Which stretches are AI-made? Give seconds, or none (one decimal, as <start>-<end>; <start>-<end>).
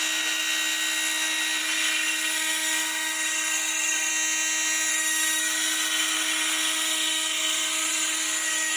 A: 1.6-4.1; 4.9-8.8